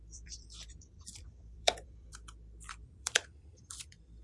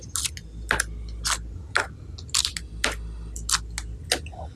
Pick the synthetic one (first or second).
first